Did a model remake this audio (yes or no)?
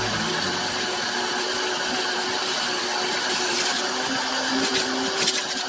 no